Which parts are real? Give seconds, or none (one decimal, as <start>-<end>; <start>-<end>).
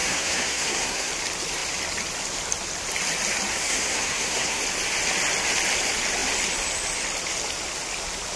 1.1-3.5; 4.6-8.4